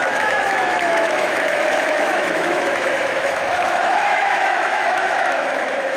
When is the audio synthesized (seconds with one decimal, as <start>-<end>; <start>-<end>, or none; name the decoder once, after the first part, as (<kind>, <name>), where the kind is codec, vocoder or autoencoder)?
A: 0.0-6.0 (autoencoder, DAC-VAE)